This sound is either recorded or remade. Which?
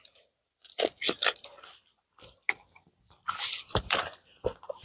recorded